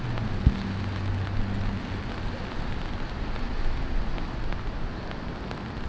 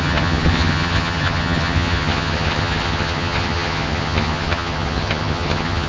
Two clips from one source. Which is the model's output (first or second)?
second